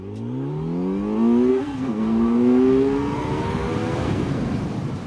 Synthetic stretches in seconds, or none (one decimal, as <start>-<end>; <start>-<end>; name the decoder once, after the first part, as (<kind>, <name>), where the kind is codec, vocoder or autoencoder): 1.5-4.6 (codec, SNAC)